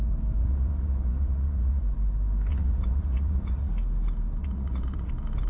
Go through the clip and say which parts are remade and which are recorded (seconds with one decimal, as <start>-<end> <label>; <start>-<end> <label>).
0.0-0.4 recorded; 0.4-1.8 remade; 1.8-2.5 recorded; 2.5-3.7 remade; 3.7-4.4 recorded; 4.4-5.1 remade; 5.1-5.5 recorded